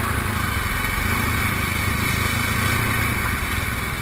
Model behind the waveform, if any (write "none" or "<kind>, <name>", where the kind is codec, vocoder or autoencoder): none